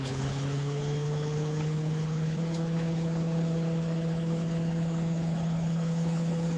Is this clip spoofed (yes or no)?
yes